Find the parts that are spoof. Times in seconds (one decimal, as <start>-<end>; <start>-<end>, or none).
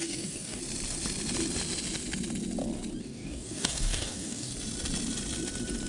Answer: 0.0-0.6; 3.0-4.5